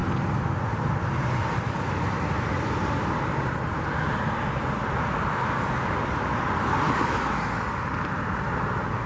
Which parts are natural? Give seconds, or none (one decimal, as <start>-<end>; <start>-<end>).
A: 0.0-9.1

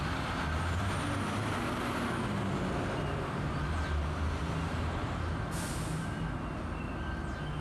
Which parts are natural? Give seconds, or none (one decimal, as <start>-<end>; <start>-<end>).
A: 0.0-7.6

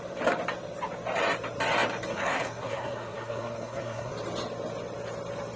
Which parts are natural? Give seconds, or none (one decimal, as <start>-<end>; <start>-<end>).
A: 0.0-2.1; 4.1-5.6

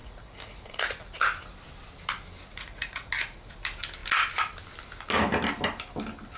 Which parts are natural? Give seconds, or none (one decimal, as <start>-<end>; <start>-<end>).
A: 0.9-2.5; 3.1-6.4

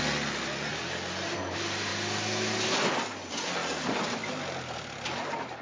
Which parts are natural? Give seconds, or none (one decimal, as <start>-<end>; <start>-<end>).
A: 0.0-5.6

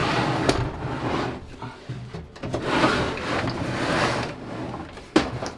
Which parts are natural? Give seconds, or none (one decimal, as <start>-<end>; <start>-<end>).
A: 0.0-5.6